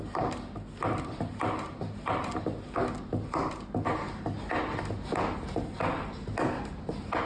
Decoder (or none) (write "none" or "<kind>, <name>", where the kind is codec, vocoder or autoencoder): none